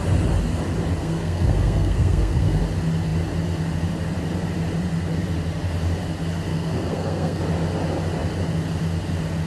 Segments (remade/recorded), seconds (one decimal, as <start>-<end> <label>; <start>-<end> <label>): 0.0-1.0 recorded; 1.0-2.6 remade; 2.6-6.5 recorded; 6.5-7.4 remade; 7.4-9.5 recorded